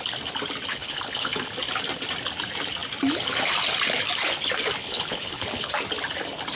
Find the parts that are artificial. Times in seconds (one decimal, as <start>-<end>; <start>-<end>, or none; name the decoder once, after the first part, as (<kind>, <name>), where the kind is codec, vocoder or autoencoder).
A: 0.7-1.5 (codec, HILCodec); 4.8-5.7